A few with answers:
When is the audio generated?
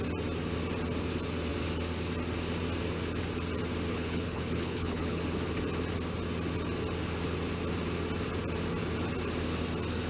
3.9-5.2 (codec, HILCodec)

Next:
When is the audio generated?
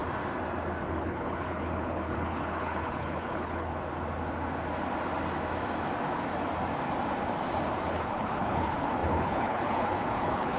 0.9-3.7 (codec, HILCodec); 7.9-10.6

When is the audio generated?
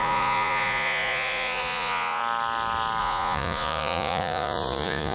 0.0-2.2 (vocoder, Vocos); 3.0-5.1